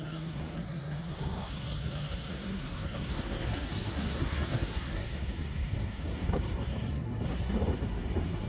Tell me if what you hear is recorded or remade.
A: remade